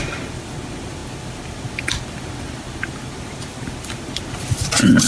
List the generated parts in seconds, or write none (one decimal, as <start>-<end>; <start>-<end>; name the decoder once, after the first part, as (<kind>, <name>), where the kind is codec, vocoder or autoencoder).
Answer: none